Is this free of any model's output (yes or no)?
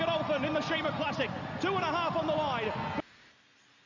yes